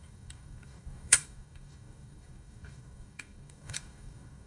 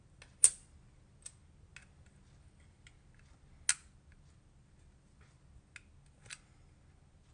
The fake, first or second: first